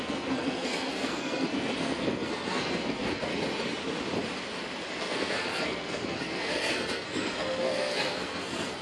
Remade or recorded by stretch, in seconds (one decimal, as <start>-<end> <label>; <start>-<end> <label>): 0.0-3.3 remade; 3.3-5.0 recorded; 5.0-8.8 remade